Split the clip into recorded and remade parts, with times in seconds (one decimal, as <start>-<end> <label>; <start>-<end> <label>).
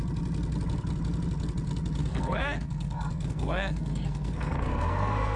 0.0-2.0 recorded; 2.0-5.4 remade